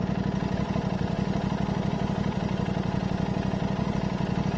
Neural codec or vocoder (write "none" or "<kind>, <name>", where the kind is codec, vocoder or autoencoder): none